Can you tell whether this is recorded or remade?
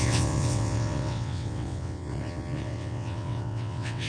remade